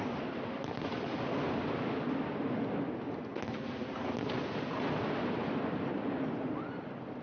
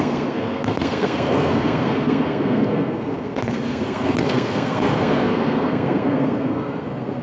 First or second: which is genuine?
first